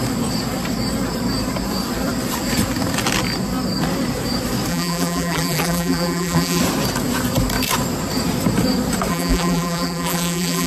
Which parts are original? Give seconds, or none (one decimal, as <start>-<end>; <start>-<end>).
0.0-4.7; 6.6-9.1